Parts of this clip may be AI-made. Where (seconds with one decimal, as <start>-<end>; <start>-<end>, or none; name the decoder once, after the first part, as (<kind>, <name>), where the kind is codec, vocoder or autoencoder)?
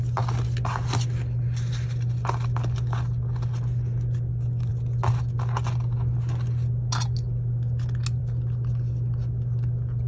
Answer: none